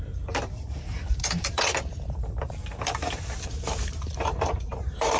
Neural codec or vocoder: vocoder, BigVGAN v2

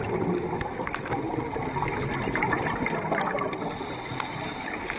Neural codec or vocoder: none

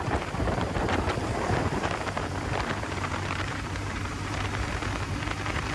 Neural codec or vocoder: vocoder, BigVGAN v2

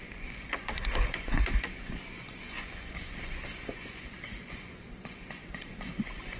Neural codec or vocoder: vocoder, Vocos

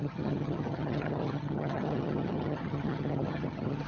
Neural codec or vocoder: vocoder, HiFi-GAN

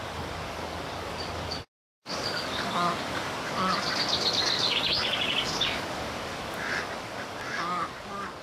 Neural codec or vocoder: codec, DAC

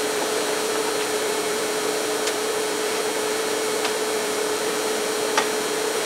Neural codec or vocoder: vocoder, BigVGAN v2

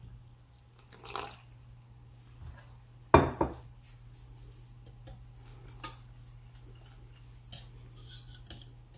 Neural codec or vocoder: none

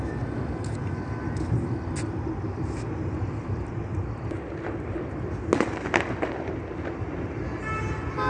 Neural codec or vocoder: none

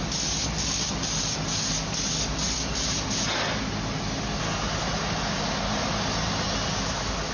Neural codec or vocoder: none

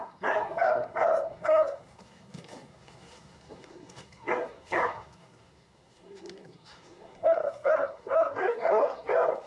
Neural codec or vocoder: codec, SNAC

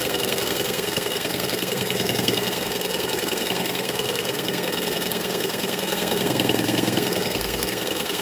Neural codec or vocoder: codec, SNAC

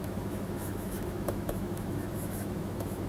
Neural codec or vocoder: autoencoder, DAC-VAE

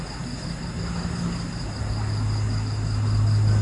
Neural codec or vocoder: none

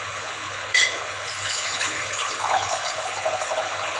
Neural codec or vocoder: codec, HILCodec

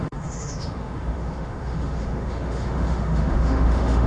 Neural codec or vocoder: autoencoder, DAC-VAE